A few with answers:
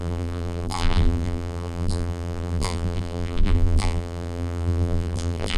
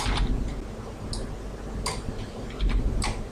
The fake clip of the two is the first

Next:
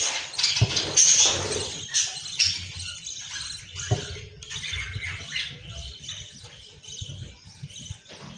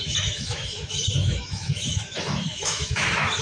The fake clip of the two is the second